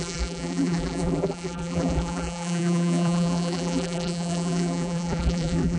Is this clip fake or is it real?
fake